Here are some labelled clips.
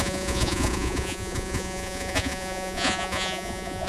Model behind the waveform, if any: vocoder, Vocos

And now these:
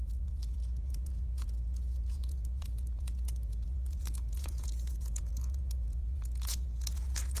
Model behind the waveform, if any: vocoder, Vocos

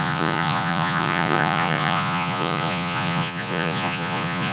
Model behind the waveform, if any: vocoder, Vocos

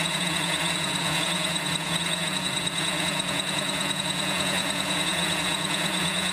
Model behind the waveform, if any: vocoder, Vocos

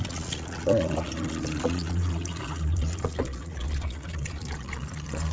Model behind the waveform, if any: vocoder, Vocos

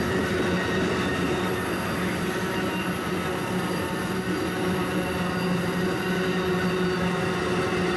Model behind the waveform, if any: none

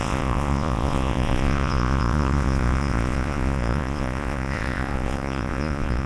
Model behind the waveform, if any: vocoder, Vocos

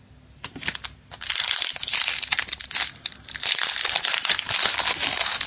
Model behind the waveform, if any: none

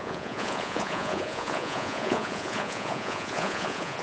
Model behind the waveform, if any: vocoder, Vocos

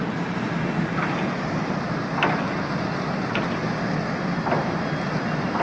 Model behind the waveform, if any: none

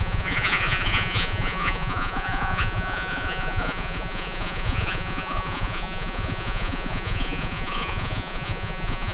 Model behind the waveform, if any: vocoder, Vocos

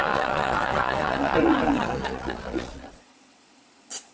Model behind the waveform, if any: vocoder, Vocos